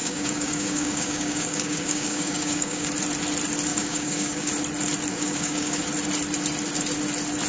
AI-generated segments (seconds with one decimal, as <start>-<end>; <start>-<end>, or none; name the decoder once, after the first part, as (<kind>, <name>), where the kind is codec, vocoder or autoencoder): 0.0-2.9 (codec, DAC); 3.7-4.5; 5.1-5.8